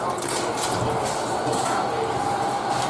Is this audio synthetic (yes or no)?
no